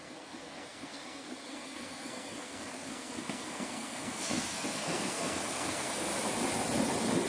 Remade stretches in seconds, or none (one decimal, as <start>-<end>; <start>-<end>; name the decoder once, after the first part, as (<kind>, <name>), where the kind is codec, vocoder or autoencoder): 0.0-6.1 (codec, SNAC)